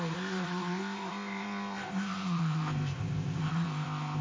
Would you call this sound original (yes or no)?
no